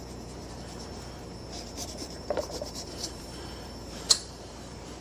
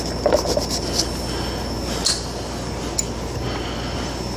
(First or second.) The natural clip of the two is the second